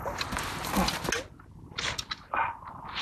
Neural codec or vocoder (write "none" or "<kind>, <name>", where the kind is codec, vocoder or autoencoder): none